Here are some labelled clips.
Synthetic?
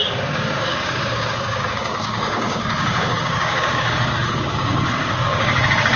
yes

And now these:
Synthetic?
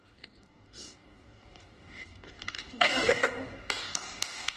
yes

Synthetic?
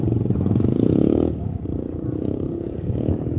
yes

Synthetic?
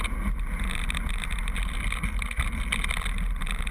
no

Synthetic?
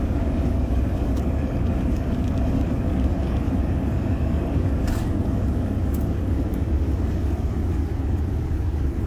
yes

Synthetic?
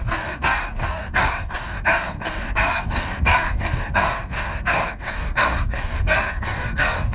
yes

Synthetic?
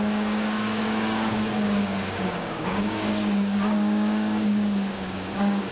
yes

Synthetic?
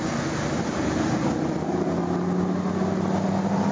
no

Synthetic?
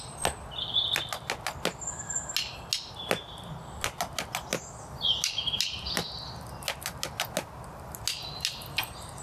no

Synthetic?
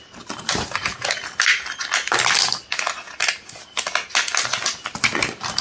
no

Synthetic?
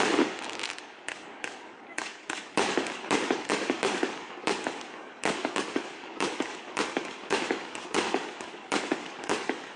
yes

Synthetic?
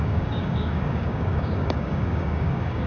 yes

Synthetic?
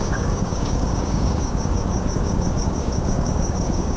yes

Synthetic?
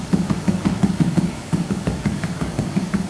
yes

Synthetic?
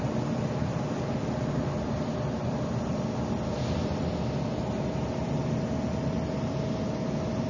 no